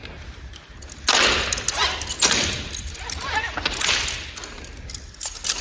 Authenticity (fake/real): real